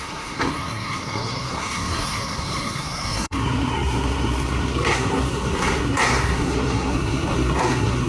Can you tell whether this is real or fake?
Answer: fake